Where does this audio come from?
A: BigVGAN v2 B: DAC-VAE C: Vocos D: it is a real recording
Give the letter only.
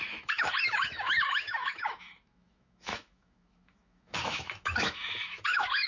B